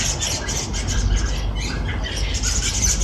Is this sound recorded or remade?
recorded